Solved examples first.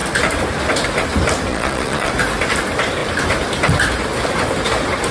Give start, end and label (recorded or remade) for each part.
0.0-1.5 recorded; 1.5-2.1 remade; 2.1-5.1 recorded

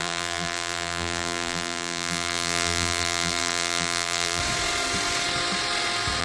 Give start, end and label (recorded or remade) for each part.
0.0-4.4 remade; 4.4-6.2 recorded

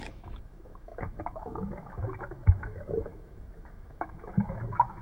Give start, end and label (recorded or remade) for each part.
0.0-5.0 remade

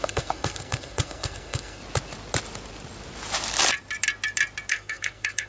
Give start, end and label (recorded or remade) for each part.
0.0-1.8 remade; 1.8-4.7 recorded; 4.7-5.5 remade

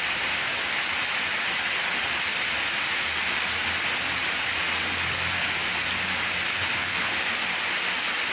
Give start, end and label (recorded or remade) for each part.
0.0-6.5 recorded; 6.5-7.1 remade; 7.1-8.3 recorded

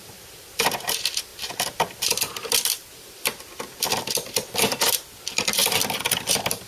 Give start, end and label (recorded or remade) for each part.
0.0-6.7 remade